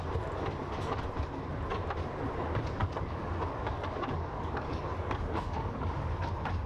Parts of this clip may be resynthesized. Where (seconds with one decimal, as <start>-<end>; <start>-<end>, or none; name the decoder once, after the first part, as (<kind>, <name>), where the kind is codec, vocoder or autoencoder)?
2.8-6.3 (codec, DAC)